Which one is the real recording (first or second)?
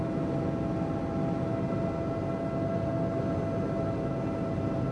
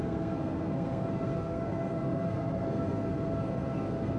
first